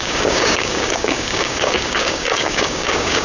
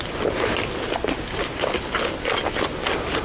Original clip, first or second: second